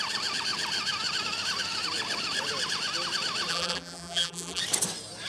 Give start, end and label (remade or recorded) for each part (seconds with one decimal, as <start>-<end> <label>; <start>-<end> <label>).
0.0-3.5 recorded; 3.5-4.6 remade; 4.6-5.3 recorded